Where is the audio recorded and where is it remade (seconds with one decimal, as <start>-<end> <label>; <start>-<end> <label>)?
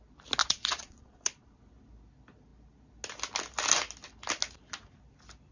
0.0-0.4 recorded; 0.4-1.6 remade; 1.6-5.5 recorded